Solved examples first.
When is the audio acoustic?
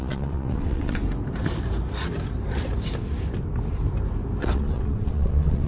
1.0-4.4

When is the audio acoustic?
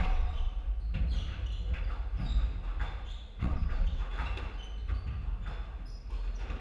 0.5-3.4; 4.0-6.6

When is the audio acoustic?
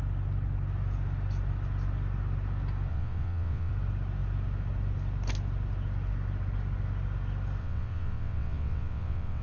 0.0-2.9; 3.7-7.6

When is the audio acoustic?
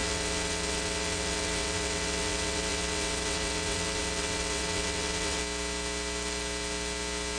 5.4-7.4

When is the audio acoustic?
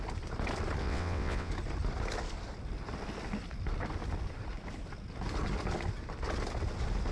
0.0-0.8; 1.5-7.1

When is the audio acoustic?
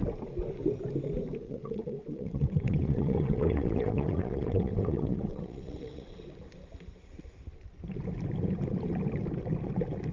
0.0-1.4; 6.2-10.1